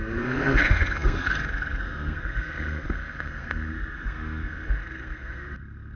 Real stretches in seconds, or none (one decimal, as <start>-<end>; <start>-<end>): none

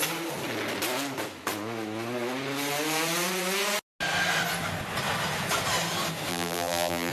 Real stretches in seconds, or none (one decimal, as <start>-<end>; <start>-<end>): 0.0-6.3

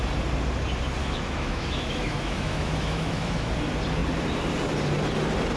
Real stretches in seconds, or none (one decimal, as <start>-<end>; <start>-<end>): 0.0-1.0; 3.5-5.6

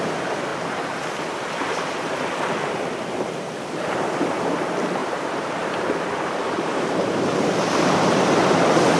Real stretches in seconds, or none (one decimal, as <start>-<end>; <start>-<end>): 0.0-0.5; 1.0-5.0; 8.2-9.0